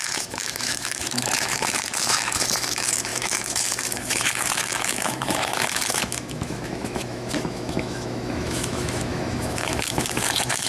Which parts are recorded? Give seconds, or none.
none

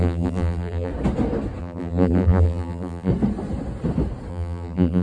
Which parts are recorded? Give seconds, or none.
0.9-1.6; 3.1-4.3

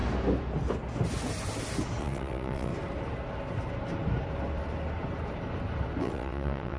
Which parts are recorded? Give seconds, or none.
0.0-2.0; 2.7-6.0

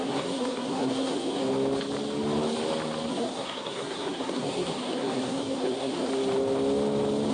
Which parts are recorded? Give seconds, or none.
1.4-3.1; 6.1-7.3

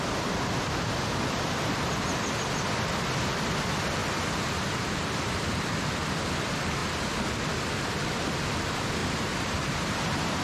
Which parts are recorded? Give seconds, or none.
0.0-4.0; 6.1-9.0; 10.0-10.4

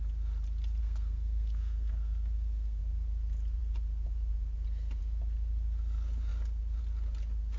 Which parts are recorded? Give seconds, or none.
0.0-0.8; 2.8-7.6